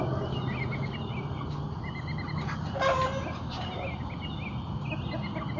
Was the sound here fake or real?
real